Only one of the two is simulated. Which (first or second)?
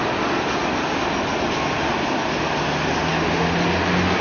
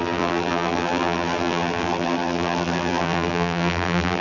second